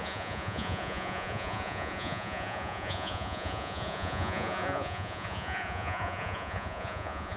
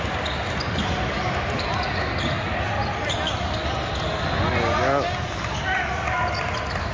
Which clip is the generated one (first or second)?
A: first